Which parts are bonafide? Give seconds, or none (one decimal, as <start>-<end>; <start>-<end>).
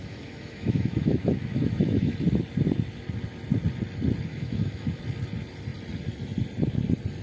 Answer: 2.1-4.3; 5.0-7.2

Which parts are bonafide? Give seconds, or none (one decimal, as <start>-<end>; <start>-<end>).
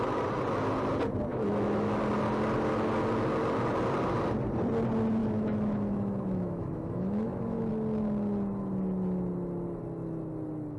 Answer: 0.0-1.3; 2.0-5.2; 7.7-10.8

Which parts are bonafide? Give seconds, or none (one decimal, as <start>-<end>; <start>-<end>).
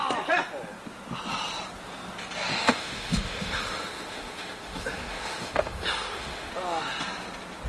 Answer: 0.0-2.5; 6.5-7.7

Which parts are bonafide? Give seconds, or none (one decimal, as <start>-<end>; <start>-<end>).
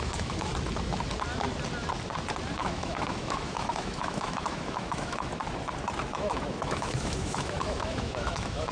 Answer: 0.5-2.6; 5.3-6.1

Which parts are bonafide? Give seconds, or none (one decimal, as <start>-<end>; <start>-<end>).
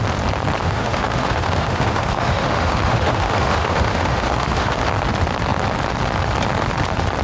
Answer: 0.0-0.6; 4.9-7.2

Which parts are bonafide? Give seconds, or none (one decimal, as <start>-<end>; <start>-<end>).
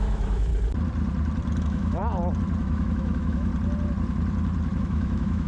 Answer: 0.5-1.6; 2.0-2.6; 3.5-4.8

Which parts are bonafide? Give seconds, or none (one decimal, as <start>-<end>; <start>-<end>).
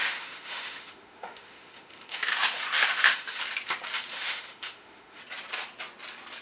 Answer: 3.4-4.1; 5.2-6.4